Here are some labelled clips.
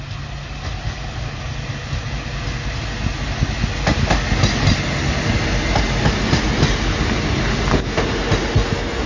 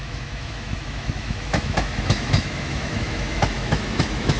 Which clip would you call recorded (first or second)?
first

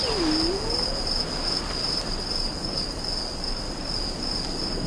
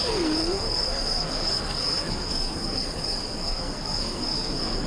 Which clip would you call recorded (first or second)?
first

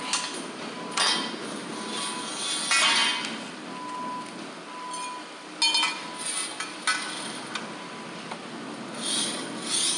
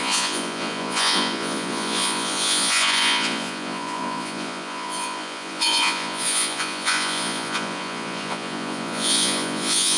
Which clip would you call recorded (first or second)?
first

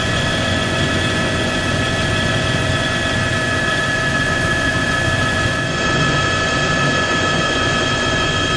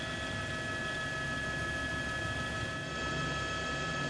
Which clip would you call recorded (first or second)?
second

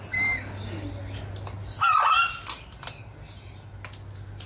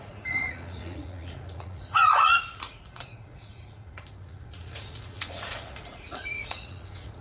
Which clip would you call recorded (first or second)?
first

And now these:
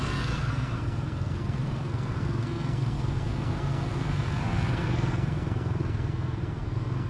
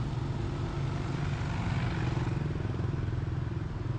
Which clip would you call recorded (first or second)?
second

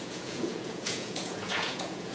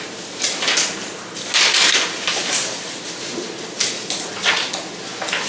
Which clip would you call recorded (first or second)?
second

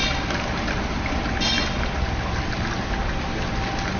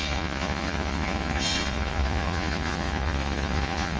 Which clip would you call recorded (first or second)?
first